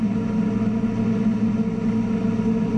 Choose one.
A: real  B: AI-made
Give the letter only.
A